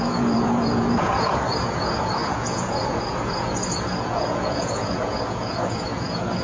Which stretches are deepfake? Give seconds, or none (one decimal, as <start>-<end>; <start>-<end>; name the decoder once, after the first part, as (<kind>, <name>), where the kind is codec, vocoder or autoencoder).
0.0-6.4 (vocoder, Vocos)

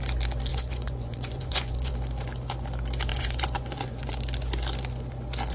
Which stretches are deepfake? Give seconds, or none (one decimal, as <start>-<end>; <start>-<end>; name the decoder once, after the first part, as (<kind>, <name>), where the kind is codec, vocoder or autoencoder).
0.5-1.9 (vocoder, Vocos); 3.1-4.1

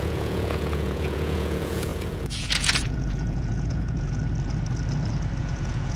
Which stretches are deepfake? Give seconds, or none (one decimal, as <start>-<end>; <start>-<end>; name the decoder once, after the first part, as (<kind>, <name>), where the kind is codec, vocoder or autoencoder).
0.0-4.2 (vocoder, Vocos); 5.4-6.0

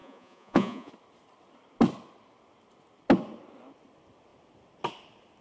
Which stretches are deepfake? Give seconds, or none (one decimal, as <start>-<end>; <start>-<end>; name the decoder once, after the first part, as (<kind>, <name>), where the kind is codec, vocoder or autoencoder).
0.0-0.9 (vocoder, Vocos)

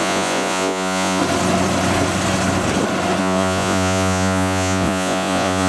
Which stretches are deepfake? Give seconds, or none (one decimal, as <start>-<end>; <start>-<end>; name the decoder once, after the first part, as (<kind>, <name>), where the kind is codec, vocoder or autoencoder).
0.0-1.2 (vocoder, Vocos); 3.2-5.7